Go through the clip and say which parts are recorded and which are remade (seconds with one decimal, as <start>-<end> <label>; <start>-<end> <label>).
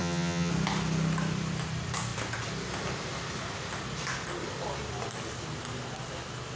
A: 0.0-0.5 remade; 0.5-6.6 recorded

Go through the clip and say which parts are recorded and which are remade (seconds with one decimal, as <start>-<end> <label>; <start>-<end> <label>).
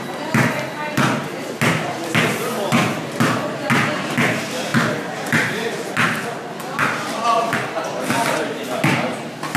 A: 0.0-9.6 recorded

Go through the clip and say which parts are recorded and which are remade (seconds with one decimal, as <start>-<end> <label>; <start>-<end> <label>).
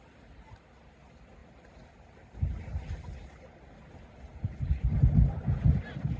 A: 0.0-6.2 recorded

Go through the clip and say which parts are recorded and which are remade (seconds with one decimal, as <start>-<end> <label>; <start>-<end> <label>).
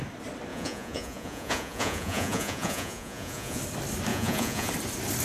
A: 0.0-0.5 recorded; 0.5-3.6 remade; 3.6-4.1 recorded; 4.1-4.7 remade; 4.7-5.2 recorded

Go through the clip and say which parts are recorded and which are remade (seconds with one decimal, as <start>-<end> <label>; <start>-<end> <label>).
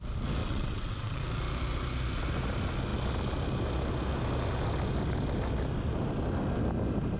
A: 0.0-0.4 recorded; 0.4-1.2 remade; 1.2-7.2 recorded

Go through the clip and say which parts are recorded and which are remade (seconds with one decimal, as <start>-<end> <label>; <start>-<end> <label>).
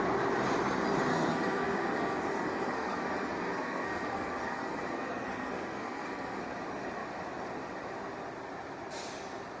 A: 0.0-1.1 recorded; 1.1-6.4 remade; 6.4-9.6 recorded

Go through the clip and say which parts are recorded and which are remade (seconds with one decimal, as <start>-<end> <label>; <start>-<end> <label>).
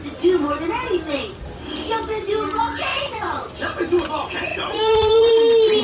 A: 0.0-2.9 recorded; 2.9-3.5 remade; 3.5-4.5 recorded; 4.5-5.3 remade; 5.3-5.8 recorded